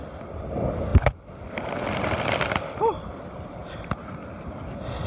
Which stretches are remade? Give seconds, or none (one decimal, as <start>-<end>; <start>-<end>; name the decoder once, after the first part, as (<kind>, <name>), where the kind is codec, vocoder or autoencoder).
none